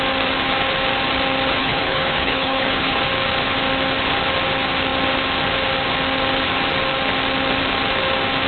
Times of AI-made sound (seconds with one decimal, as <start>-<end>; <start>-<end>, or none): 1.6-3.0